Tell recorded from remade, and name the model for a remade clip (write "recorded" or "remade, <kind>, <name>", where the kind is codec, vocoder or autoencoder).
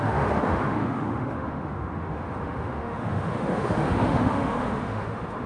remade, autoencoder, DAC-VAE